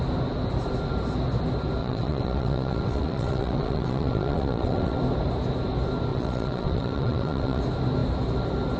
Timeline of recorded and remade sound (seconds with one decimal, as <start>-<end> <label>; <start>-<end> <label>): 0.0-1.8 recorded; 1.8-5.0 remade; 5.0-6.1 recorded; 6.1-7.6 remade; 7.6-8.8 recorded